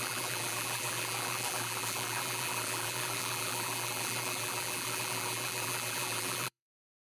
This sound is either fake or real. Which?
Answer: fake